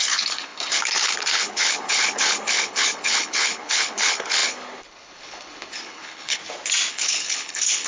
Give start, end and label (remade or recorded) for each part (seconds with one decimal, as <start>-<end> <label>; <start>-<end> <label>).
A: 0.0-6.4 remade; 6.4-6.9 recorded; 6.9-7.9 remade